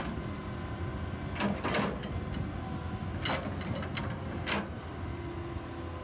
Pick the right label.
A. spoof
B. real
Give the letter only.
B